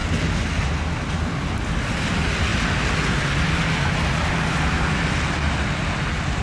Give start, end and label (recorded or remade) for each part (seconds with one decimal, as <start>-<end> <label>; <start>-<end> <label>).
0.0-6.4 recorded